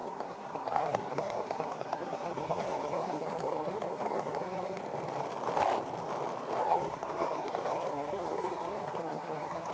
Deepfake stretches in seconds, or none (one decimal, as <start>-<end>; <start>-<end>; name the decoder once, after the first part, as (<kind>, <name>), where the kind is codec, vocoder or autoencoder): 0.0-4.8 (codec, SNAC); 6.6-9.7